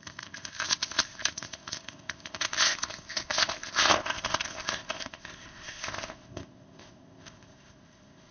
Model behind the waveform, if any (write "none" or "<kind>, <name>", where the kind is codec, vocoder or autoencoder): codec, ZipCodec